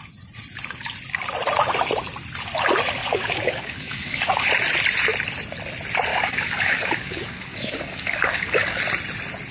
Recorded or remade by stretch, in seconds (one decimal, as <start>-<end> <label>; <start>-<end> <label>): 0.0-3.0 recorded; 3.0-4.5 remade; 4.5-6.1 recorded; 6.1-8.8 remade; 8.8-9.5 recorded